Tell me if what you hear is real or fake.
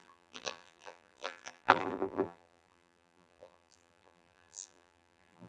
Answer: fake